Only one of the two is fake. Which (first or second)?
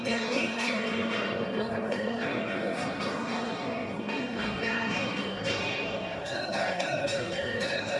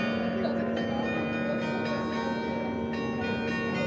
first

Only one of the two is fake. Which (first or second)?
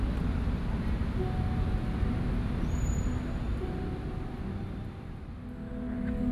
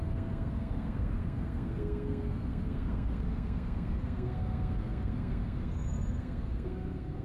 second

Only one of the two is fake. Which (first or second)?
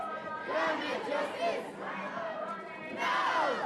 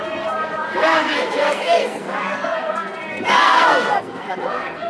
second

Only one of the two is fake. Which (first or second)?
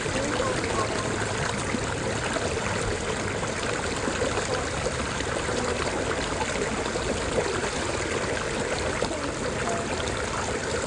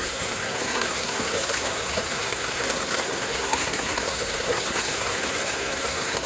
second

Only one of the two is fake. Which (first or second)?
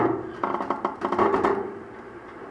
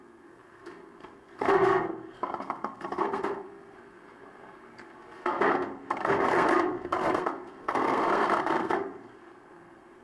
second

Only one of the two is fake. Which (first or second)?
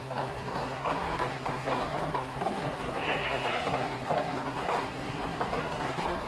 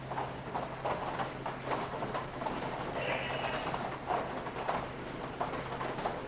first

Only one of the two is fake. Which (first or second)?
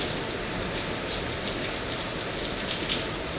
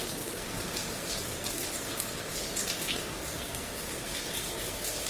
second